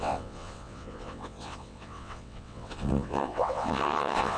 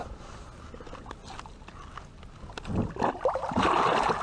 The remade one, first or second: first